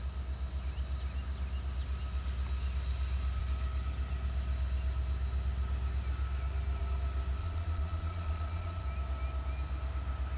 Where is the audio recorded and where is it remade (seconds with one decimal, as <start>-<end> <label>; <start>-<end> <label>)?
0.0-7.4 recorded; 7.4-8.8 remade; 8.8-10.4 recorded